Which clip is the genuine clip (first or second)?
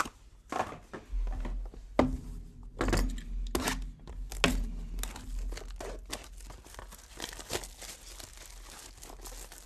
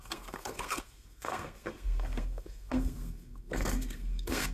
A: first